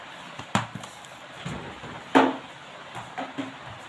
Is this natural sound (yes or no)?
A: yes